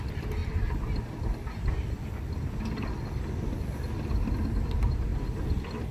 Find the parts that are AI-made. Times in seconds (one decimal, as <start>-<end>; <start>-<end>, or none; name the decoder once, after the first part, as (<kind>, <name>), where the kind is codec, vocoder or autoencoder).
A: none